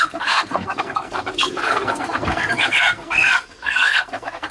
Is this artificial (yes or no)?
yes